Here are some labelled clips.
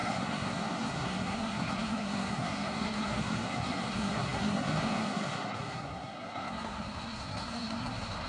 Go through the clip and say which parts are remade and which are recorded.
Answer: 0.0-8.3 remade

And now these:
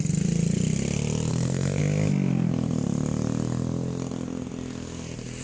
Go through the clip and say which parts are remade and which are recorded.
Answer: 0.0-1.3 recorded; 1.3-1.8 remade; 1.8-5.4 recorded

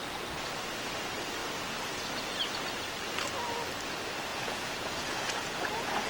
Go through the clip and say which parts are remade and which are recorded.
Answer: 0.0-4.3 recorded; 4.3-6.1 remade